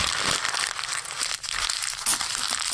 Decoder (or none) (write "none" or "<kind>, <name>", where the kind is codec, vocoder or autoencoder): none